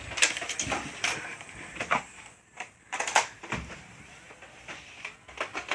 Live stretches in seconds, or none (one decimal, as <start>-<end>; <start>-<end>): 0.0-1.3; 4.7-5.7